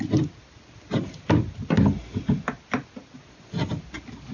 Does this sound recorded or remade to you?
recorded